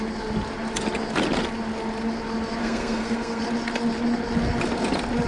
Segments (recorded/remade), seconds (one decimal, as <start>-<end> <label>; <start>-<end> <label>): 0.0-2.6 recorded; 2.6-3.4 remade; 3.4-5.3 recorded